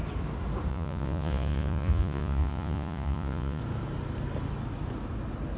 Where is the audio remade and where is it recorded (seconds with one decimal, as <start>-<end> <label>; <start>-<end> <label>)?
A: 0.0-0.7 recorded; 0.7-3.6 remade; 3.6-5.6 recorded